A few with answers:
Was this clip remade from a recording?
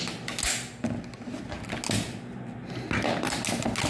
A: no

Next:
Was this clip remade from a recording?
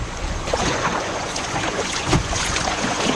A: yes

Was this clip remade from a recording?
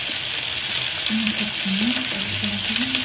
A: no